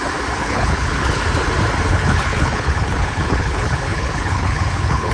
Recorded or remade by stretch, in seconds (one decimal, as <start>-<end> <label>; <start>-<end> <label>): 0.0-0.4 recorded; 0.4-1.2 remade; 1.2-1.9 recorded; 1.9-5.1 remade

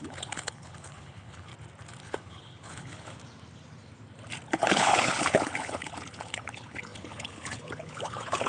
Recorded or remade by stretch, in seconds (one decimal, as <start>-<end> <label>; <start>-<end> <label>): 0.0-1.5 remade; 1.5-2.0 recorded; 2.0-3.2 remade; 3.2-4.5 recorded; 4.5-8.5 remade